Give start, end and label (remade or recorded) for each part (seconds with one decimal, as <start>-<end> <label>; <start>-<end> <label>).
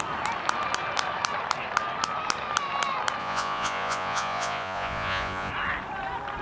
0.0-3.2 recorded; 3.2-5.5 remade; 5.5-6.4 recorded